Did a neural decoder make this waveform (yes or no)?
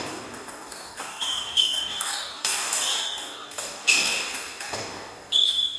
yes